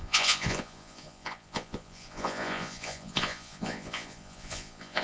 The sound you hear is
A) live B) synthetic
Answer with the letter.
B